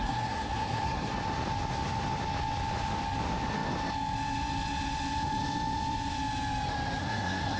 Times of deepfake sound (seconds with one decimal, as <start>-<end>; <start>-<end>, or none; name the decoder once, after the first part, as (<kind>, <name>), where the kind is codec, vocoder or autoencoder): 0.0-1.1 (codec, SNAC); 7.0-7.6

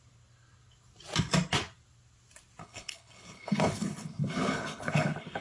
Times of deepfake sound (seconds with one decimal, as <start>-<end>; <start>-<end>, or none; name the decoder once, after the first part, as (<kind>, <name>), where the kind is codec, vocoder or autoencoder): 2.6-5.4 (codec, HILCodec)

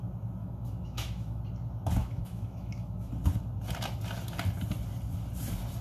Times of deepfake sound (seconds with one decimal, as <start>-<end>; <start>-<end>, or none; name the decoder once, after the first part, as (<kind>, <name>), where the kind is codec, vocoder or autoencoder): 0.4-1.4 (autoencoder, DAC-VAE); 2.0-3.1

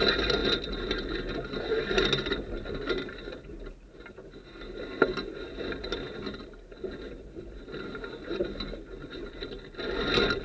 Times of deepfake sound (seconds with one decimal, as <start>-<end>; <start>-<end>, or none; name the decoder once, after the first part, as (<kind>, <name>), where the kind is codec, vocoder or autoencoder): none

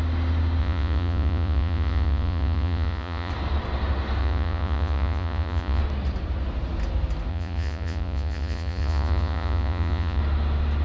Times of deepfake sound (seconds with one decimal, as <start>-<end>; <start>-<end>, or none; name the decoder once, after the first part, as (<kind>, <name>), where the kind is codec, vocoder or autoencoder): 0.6-3.3 (vocoder, Vocos); 4.2-5.8; 7.3-10.2

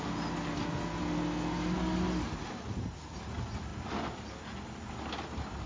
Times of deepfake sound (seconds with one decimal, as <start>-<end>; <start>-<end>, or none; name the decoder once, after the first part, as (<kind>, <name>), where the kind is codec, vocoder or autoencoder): none